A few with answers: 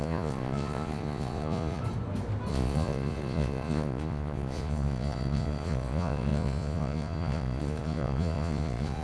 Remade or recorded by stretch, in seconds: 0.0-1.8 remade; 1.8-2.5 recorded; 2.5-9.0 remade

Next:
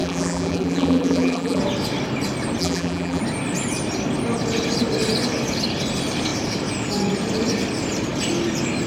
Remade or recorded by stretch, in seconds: 0.0-1.6 remade; 1.6-2.6 recorded; 2.6-3.2 remade; 3.2-8.9 recorded

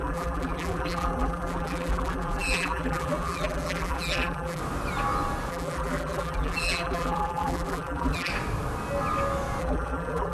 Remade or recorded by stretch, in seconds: 0.0-4.6 remade; 4.6-5.5 recorded; 5.5-8.3 remade; 8.3-9.6 recorded; 9.6-10.3 remade

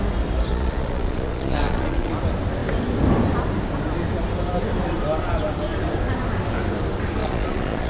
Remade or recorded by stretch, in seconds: 0.0-0.5 recorded; 0.5-2.1 remade; 2.1-7.2 recorded; 7.2-7.9 remade

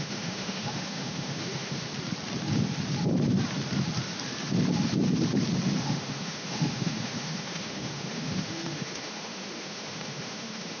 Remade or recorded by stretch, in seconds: 0.0-1.9 remade; 1.9-5.8 recorded; 5.8-10.8 remade

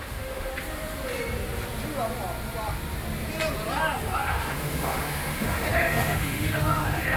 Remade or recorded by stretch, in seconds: 0.0-0.5 remade; 0.5-4.0 recorded; 4.0-7.2 remade

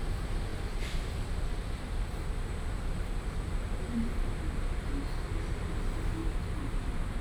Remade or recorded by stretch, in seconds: 0.0-0.5 recorded; 0.5-4.6 remade; 4.6-6.2 recorded; 6.2-7.2 remade